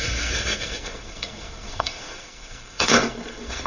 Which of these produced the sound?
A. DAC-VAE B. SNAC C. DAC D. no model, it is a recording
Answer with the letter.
B